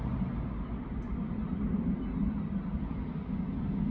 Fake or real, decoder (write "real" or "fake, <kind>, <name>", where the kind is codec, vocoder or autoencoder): real